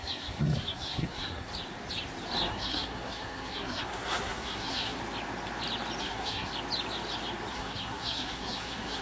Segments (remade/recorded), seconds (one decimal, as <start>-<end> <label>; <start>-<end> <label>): 0.0-1.5 remade; 1.5-2.5 recorded; 2.5-5.0 remade; 5.0-6.0 recorded; 6.0-6.5 remade; 6.5-7.5 recorded; 7.5-9.0 remade